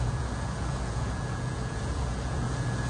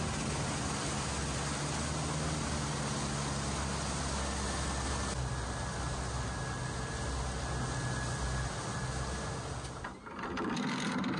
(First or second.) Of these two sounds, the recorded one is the second